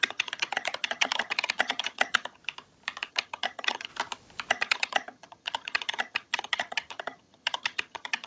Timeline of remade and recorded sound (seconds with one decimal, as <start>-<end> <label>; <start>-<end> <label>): 0.0-2.4 remade; 2.4-3.1 recorded; 3.1-3.9 remade; 3.9-4.5 recorded; 4.5-8.3 remade